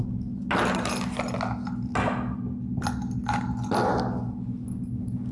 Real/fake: real